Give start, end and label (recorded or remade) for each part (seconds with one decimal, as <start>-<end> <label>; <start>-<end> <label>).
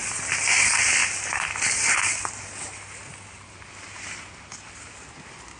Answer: 0.0-5.6 recorded